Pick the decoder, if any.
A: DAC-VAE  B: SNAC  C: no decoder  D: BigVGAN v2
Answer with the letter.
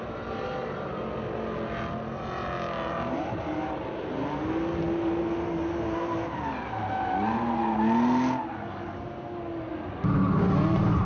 C